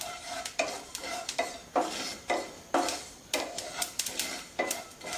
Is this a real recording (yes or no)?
yes